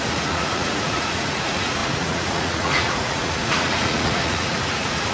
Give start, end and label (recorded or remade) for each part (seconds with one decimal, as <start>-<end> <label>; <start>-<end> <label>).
0.0-5.1 remade